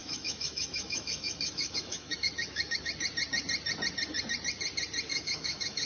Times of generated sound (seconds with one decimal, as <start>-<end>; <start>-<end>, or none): 0.0-2.9; 5.1-5.9